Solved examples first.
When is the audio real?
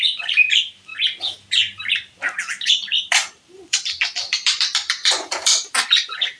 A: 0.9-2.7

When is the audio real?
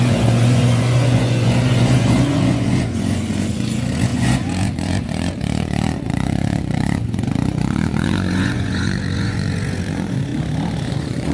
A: 10.3-10.9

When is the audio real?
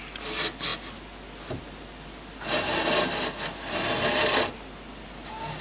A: 0.0-5.6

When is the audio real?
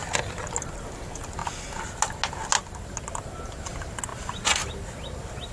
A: 0.0-5.5